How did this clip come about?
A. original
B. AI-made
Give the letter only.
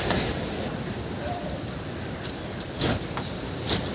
A